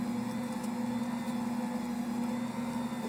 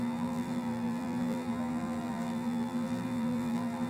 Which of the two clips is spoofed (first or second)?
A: second